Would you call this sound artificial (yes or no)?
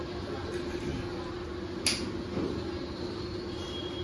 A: no